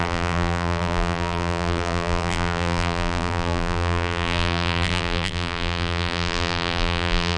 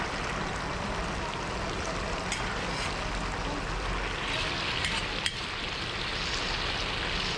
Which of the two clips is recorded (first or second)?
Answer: second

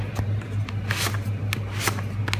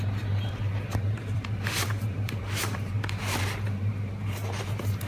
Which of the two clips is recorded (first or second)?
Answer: first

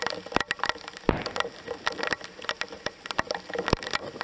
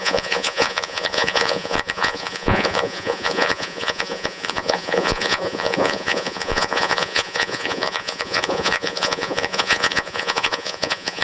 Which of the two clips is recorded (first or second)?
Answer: first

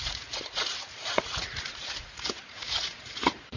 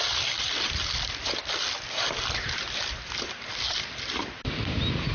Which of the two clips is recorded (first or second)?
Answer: second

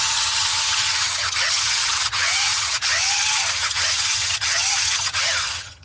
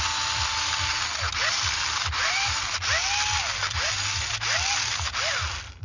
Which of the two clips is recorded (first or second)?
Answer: second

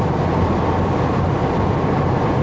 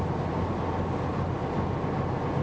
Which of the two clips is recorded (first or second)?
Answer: second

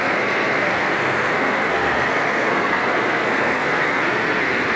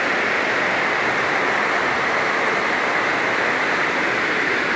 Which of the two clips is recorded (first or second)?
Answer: second